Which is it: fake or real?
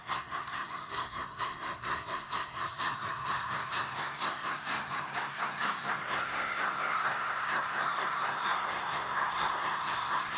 fake